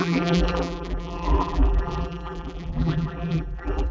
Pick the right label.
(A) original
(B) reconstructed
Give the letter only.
B